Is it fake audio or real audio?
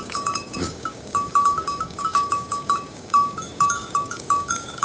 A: fake